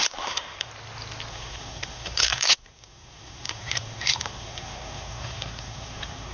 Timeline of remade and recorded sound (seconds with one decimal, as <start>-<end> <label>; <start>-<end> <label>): 0.0-0.7 remade; 0.7-1.3 recorded; 1.3-6.3 remade